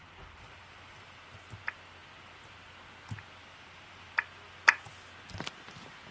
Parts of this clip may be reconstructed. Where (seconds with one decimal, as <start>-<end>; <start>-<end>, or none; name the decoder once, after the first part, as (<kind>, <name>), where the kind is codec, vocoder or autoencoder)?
0.0-1.2 (vocoder, BigVGAN v2); 3.4-4.1